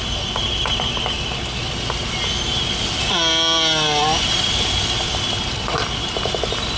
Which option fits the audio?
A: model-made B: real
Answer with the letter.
B